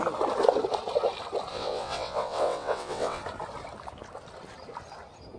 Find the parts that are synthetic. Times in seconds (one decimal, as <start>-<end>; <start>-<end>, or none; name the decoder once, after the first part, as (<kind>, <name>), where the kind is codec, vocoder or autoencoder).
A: 1.5-3.2 (vocoder, WaveNeXt)